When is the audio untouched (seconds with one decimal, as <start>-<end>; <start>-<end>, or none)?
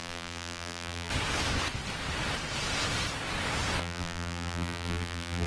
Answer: 1.1-3.8